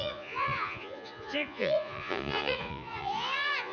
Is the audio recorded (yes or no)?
no